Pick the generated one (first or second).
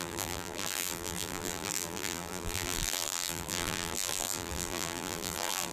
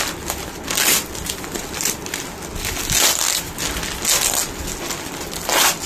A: first